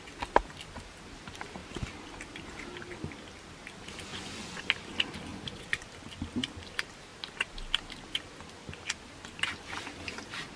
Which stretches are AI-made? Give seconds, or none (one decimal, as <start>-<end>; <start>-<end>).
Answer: 4.1-4.6; 5.3-5.9